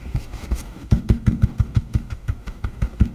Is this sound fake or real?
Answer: fake